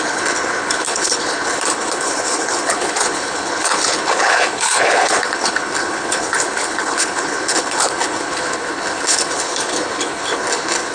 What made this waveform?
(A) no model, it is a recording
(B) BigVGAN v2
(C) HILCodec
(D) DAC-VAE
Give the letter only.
C